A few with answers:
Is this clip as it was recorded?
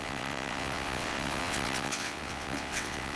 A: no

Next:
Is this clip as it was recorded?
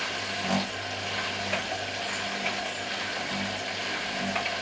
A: yes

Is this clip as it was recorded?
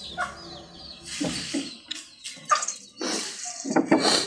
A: yes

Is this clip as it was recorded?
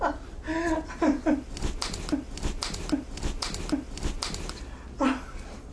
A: yes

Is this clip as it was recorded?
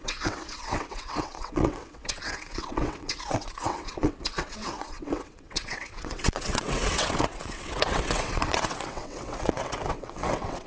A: no